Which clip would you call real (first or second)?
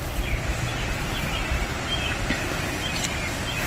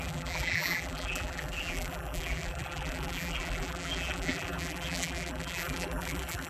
first